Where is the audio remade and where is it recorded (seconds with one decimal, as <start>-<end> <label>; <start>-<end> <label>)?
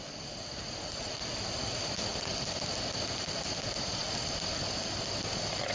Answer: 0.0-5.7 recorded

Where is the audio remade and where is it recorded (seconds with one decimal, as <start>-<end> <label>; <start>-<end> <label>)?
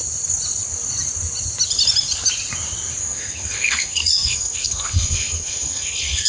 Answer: 0.0-3.0 recorded; 3.0-6.3 remade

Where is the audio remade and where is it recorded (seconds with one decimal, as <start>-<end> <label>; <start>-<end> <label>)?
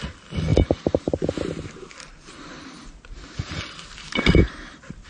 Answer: 0.0-5.1 recorded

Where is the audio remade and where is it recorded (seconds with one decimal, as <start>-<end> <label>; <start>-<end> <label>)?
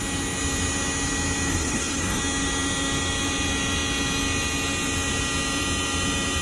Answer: 0.0-1.5 recorded; 1.5-2.2 remade; 2.2-6.4 recorded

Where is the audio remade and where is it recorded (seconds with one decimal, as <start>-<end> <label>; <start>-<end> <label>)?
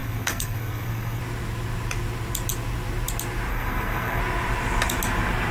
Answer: 0.0-1.2 remade; 1.2-3.5 recorded; 3.5-4.2 remade; 4.2-5.5 recorded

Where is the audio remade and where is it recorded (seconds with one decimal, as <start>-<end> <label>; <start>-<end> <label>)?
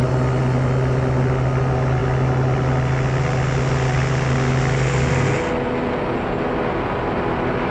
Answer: 0.0-7.7 recorded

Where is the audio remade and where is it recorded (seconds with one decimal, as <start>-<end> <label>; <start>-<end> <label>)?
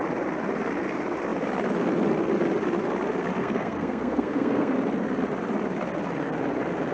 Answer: 0.0-3.4 recorded; 3.4-4.7 remade; 4.7-6.9 recorded